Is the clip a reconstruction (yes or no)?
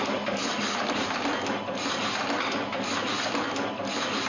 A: no